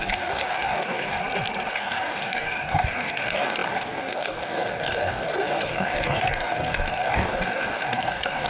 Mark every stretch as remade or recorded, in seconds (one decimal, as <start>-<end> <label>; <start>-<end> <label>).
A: 0.0-1.2 remade; 1.2-1.7 recorded; 1.7-8.5 remade